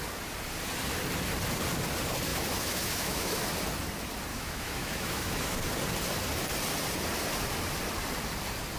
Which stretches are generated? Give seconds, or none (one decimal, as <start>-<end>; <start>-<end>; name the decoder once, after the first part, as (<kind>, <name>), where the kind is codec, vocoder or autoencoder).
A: 2.3-3.4 (autoencoder, DAC-VAE); 4.3-5.6